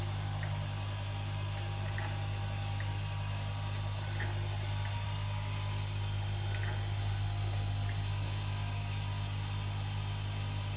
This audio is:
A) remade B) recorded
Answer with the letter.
B